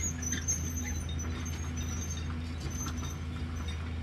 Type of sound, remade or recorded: recorded